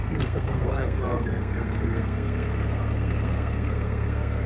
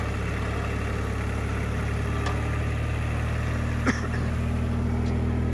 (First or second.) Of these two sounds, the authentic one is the second